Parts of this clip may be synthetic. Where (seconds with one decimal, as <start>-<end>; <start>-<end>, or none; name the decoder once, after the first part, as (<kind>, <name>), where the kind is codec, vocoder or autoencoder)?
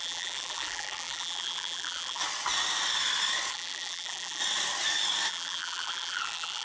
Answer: 0.0-2.2 (vocoder, BigVGAN v2); 3.5-4.4; 5.3-6.6